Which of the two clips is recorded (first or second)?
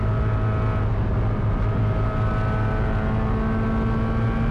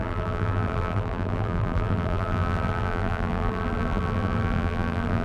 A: first